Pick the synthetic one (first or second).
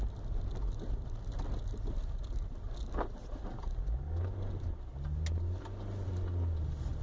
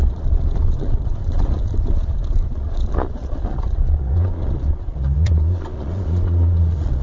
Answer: second